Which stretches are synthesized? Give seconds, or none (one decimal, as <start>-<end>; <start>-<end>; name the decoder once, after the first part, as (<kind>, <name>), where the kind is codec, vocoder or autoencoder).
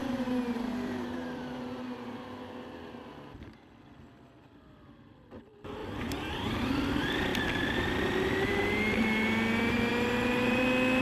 0.0-2.1 (vocoder, BigVGAN v2); 5.8-6.7; 9.9-10.6